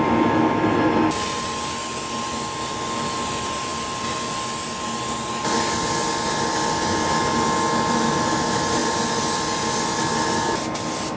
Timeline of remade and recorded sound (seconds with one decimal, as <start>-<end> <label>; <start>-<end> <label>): 0.0-11.2 recorded